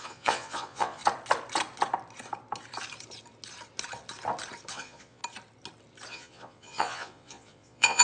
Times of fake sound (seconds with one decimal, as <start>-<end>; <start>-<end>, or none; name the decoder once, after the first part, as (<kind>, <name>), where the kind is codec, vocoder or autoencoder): 0.0-1.0 (vocoder, Vocos); 4.7-5.2; 6.1-8.0